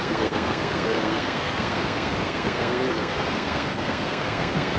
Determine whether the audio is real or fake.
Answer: fake